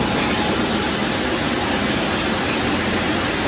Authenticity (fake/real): real